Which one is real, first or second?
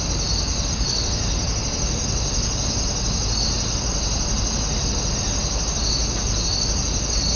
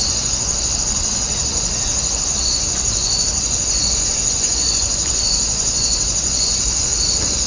first